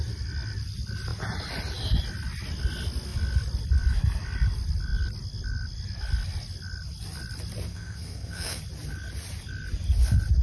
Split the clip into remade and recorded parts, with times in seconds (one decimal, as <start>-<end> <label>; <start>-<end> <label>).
0.0-7.7 recorded; 7.7-8.6 remade; 8.6-10.4 recorded